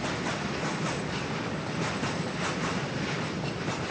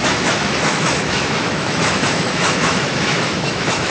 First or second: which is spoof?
second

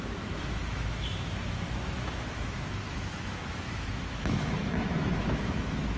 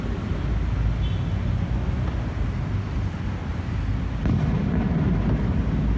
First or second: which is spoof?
first